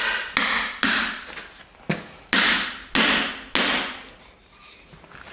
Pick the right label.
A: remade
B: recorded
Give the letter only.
B